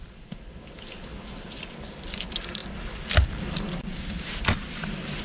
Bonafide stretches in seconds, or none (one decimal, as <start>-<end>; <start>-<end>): 0.0-5.2